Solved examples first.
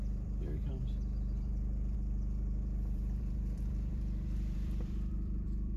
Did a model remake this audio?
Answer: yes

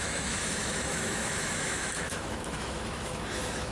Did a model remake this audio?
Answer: yes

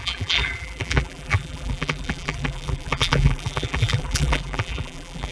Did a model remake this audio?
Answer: yes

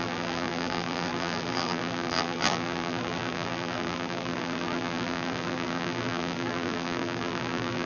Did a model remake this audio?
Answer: yes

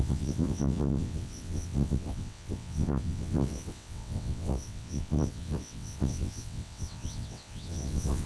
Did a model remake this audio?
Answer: yes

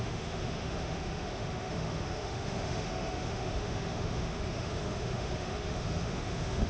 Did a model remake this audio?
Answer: yes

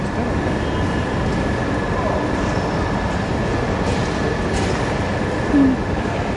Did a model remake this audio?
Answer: no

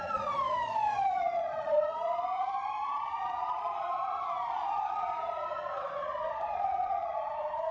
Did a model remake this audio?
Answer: yes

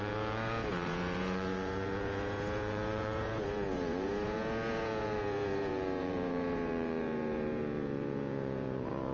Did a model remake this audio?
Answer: yes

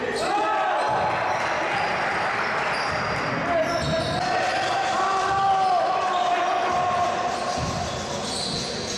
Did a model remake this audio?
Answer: no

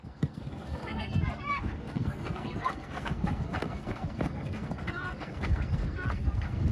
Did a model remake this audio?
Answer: yes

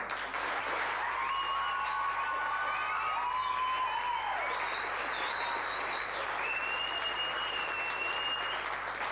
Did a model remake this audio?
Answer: no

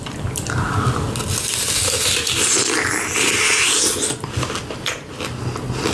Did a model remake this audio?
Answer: no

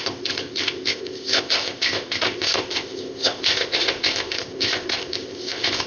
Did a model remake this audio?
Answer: yes